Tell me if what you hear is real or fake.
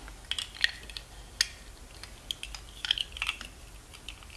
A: real